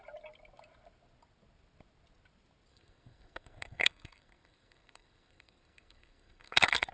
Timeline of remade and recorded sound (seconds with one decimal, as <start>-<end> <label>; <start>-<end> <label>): 0.0-2.7 recorded; 2.7-6.9 remade

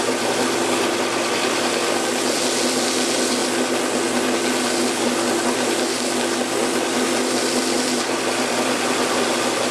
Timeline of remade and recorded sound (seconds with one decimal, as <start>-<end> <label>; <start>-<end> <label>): 0.0-9.7 recorded